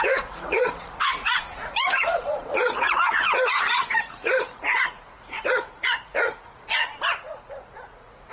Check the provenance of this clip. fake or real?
fake